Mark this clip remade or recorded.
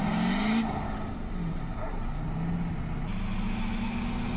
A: recorded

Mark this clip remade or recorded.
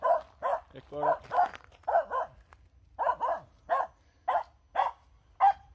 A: recorded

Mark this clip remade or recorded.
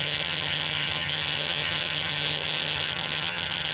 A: remade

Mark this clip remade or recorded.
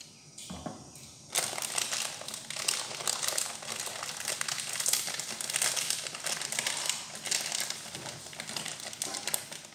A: recorded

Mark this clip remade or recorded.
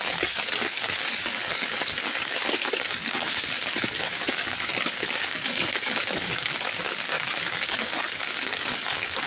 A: remade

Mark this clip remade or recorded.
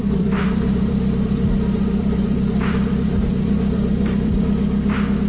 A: remade